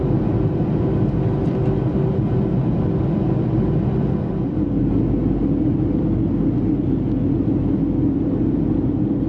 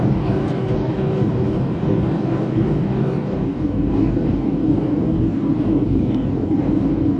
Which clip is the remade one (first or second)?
second